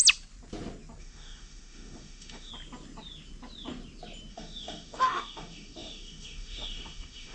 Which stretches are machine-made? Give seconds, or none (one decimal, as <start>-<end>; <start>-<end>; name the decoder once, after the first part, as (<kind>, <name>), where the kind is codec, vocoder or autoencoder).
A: 1.0-2.5 (autoencoder, DAC-VAE); 4.3-7.3